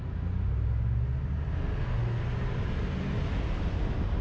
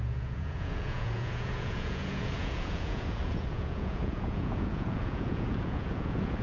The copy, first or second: second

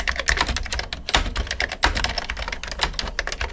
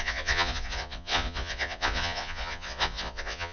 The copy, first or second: second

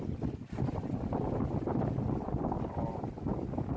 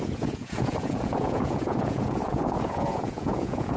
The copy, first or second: second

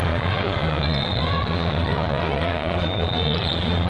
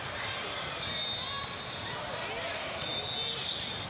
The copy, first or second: first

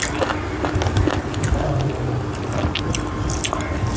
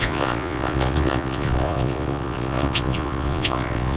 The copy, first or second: second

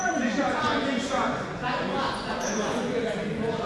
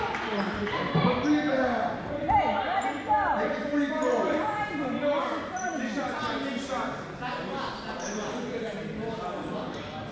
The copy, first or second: first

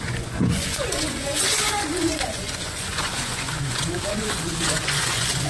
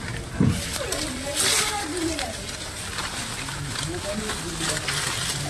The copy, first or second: first